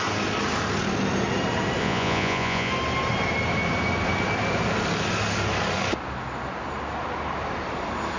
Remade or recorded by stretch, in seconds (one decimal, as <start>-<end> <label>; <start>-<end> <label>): 0.0-1.8 recorded; 1.8-2.7 remade; 2.7-8.2 recorded

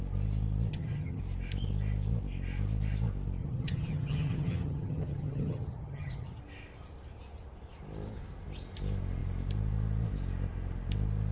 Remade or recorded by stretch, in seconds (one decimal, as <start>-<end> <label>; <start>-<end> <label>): 0.0-0.7 recorded; 0.7-1.2 remade; 1.2-3.4 recorded; 3.4-6.4 remade; 6.4-11.3 recorded

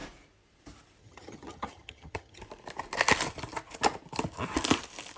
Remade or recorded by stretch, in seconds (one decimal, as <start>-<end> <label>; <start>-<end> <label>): 0.0-1.0 recorded; 1.0-2.4 remade; 2.4-5.2 recorded